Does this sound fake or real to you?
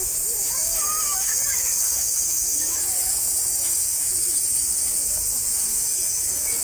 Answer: fake